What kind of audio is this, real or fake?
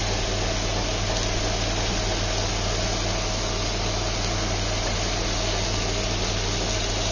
real